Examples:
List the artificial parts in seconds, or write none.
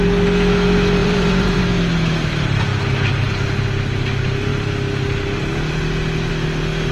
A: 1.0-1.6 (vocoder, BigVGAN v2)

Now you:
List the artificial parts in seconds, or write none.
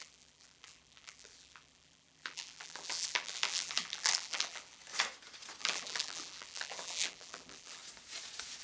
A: 0.0-4.8 (vocoder, BigVGAN v2); 5.6-7.8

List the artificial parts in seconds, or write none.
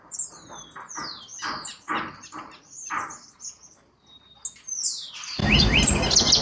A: none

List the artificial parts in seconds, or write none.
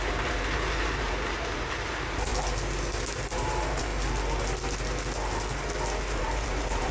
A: 0.0-2.3 (vocoder, BigVGAN v2); 3.1-3.9; 6.2-6.9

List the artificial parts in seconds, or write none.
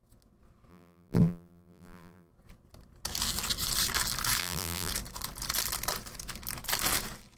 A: 0.7-2.3 (vocoder, BigVGAN v2); 4.4-4.9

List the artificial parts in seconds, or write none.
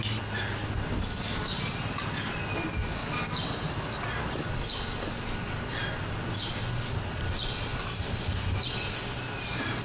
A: none